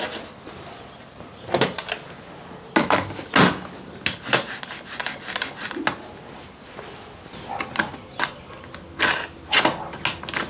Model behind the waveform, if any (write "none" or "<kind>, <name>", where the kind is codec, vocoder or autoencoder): none